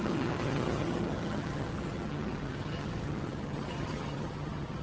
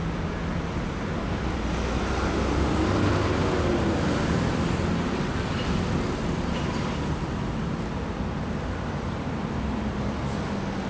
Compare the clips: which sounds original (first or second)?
second